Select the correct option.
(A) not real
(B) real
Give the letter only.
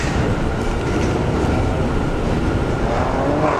B